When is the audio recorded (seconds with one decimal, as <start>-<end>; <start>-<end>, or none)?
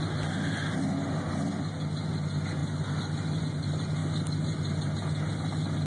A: 0.0-5.9